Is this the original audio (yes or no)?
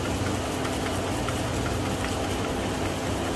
yes